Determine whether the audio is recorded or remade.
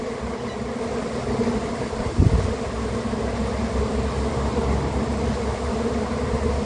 recorded